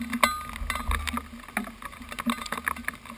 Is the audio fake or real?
real